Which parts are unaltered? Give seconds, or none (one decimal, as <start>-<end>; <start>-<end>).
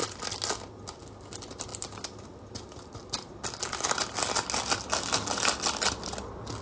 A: 0.0-6.6